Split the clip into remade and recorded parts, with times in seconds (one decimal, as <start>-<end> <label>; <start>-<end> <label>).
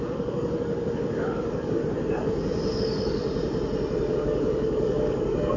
0.0-1.8 remade; 1.8-2.8 recorded; 2.8-3.2 remade; 3.2-4.1 recorded; 4.1-5.6 remade